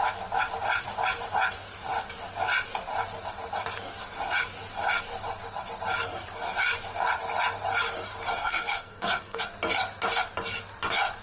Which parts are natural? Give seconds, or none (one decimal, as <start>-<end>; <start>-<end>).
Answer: 0.0-8.4; 9.4-11.2